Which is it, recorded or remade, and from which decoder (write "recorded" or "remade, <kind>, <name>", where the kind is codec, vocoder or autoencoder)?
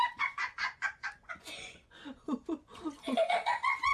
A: remade, vocoder, Vocos